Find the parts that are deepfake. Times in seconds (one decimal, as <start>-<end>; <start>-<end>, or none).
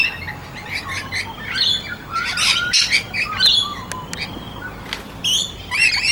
none